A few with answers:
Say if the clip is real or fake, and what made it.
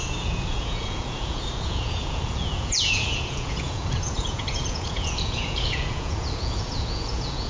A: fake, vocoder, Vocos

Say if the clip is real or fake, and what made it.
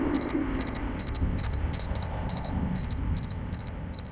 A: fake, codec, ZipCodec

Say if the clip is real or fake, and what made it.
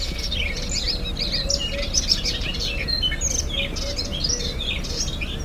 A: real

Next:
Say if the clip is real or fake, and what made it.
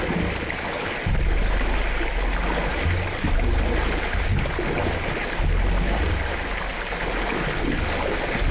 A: real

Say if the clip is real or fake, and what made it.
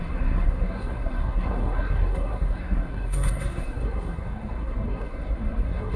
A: fake, codec, SNAC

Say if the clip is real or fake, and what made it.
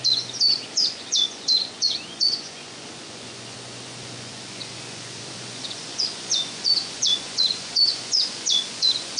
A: fake, vocoder, Vocos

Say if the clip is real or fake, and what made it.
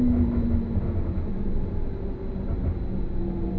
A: real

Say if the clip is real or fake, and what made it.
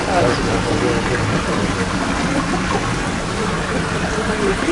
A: real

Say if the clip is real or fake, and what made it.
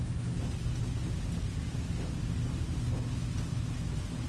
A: real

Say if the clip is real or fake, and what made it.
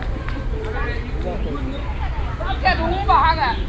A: real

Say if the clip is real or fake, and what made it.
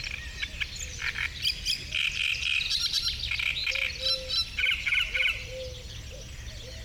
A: real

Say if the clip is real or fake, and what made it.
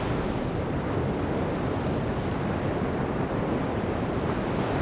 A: real